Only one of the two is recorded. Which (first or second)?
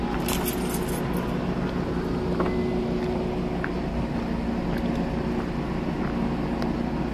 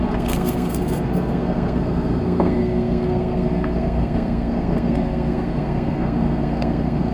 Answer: first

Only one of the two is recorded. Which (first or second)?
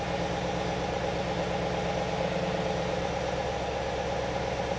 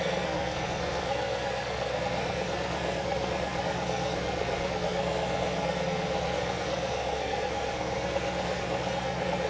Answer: first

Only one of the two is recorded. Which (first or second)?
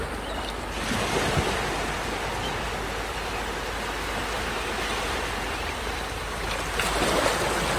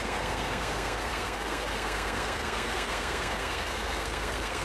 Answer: first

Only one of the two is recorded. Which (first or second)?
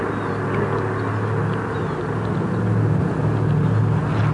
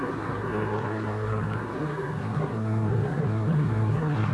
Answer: first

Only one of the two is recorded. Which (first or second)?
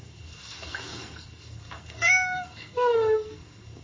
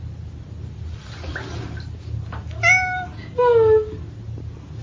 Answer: second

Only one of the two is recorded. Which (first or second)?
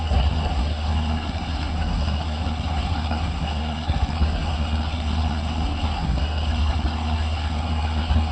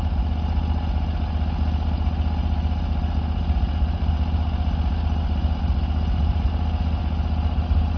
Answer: second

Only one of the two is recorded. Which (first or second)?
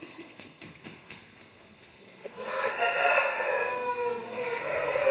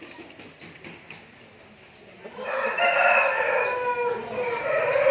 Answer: second